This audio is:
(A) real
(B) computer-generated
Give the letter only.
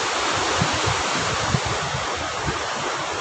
A